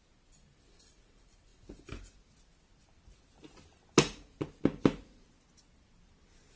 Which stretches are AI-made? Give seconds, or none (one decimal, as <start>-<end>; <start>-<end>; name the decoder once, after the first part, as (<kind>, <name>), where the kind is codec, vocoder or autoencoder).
none